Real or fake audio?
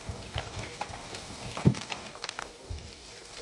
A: fake